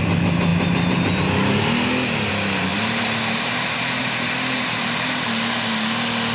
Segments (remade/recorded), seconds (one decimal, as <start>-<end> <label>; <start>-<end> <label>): 0.0-2.7 recorded; 2.7-5.7 remade; 5.7-6.3 recorded